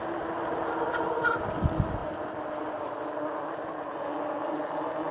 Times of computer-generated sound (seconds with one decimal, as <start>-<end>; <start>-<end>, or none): none